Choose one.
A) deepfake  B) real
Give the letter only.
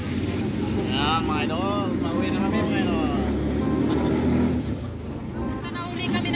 B